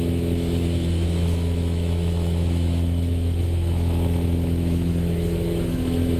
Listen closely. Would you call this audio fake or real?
fake